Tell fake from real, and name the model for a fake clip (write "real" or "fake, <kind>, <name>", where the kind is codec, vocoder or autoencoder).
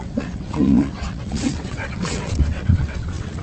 fake, vocoder, WaveNeXt